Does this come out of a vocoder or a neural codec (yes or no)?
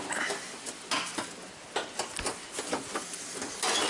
no